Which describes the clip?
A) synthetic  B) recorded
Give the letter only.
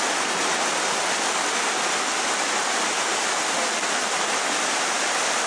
B